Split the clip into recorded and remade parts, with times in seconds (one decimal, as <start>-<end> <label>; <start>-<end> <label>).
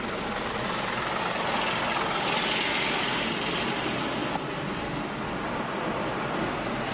0.0-6.9 recorded